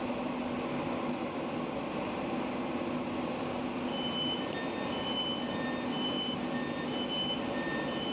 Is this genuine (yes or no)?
yes